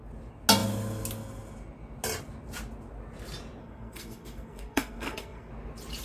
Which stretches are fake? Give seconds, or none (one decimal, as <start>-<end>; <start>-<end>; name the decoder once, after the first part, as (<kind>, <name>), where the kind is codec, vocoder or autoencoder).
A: 3.6-5.5 (codec, SNAC)